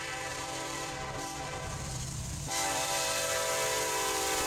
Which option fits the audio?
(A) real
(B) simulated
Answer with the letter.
B